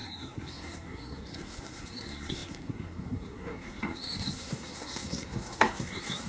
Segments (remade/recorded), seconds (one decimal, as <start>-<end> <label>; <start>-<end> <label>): 0.0-6.3 remade